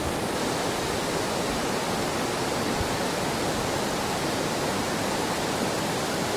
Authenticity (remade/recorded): recorded